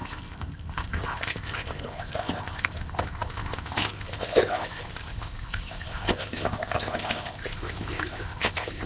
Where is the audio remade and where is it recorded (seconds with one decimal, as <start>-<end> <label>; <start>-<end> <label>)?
0.0-8.9 remade